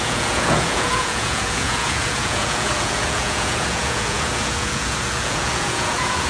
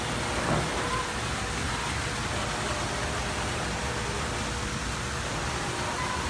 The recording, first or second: second